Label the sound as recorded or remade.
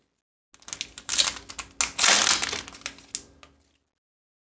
recorded